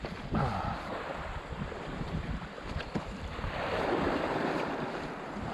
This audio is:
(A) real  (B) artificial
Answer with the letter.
B